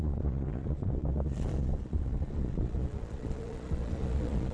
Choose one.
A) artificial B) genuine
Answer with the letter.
A